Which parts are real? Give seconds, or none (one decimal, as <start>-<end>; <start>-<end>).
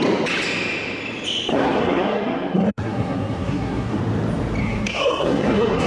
0.0-1.5; 4.0-4.6